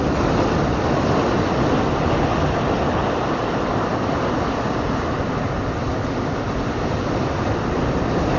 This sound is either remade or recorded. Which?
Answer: recorded